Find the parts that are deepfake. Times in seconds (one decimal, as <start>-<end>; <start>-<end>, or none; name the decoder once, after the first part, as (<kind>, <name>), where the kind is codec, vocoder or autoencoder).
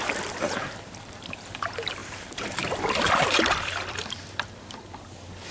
2.0-5.5 (vocoder, BigVGAN v2)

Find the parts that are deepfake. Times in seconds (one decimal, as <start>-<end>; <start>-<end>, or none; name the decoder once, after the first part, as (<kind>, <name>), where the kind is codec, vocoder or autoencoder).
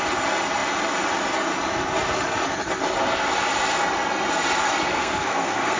4.9-5.8 (codec, SNAC)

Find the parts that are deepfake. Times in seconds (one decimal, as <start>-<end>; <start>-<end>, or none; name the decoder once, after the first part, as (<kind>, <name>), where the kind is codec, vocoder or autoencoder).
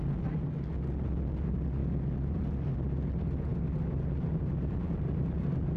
none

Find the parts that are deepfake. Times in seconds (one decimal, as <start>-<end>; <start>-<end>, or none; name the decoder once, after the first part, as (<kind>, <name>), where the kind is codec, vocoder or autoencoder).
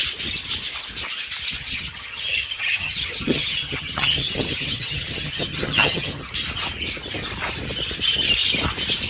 1.6-6.3 (vocoder, HiFi-GAN)